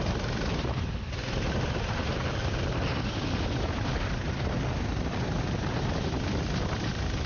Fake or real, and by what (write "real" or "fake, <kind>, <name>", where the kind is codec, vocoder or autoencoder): real